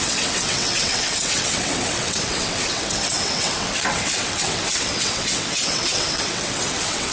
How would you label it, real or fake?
fake